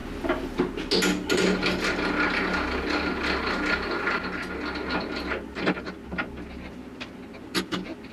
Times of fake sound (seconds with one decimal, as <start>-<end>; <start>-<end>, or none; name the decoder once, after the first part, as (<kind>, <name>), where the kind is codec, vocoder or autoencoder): 0.0-0.6 (vocoder, BigVGAN v2)